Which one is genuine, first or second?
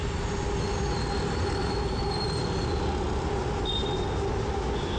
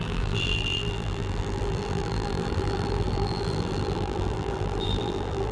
first